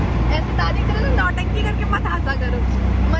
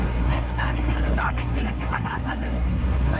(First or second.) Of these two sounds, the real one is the first